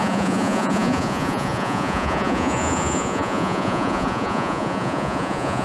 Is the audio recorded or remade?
remade